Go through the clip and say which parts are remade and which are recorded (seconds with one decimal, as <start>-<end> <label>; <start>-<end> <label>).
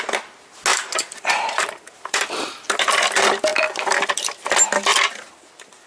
0.0-0.7 recorded; 0.7-2.4 remade; 2.4-3.5 recorded; 3.5-4.1 remade; 4.1-4.9 recorded; 4.9-5.9 remade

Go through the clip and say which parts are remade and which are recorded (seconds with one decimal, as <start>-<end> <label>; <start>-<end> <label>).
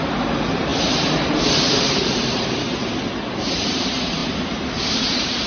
0.0-2.8 remade; 2.8-3.4 recorded; 3.4-4.2 remade; 4.2-4.9 recorded; 4.9-5.5 remade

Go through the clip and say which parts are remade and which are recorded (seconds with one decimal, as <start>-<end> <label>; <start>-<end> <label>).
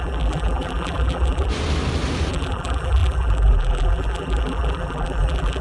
0.0-1.5 remade; 1.5-2.3 recorded; 2.3-5.6 remade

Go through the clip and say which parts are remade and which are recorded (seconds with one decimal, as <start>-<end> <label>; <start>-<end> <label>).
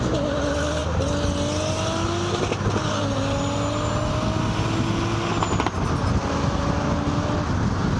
0.0-8.0 recorded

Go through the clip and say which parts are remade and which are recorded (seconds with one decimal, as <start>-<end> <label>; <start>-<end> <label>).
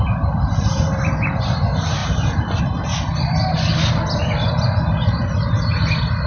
0.0-2.0 recorded; 2.0-2.6 remade; 2.6-6.3 recorded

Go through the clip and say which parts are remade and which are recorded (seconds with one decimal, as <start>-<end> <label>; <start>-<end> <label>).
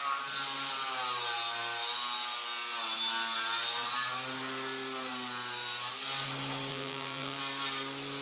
0.0-6.7 recorded; 6.7-7.4 remade; 7.4-8.2 recorded